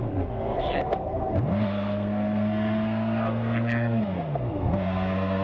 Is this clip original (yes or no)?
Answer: no